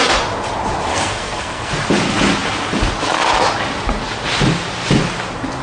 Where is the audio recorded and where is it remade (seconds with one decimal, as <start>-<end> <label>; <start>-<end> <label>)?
0.0-0.9 recorded; 0.9-1.7 remade; 1.7-5.6 recorded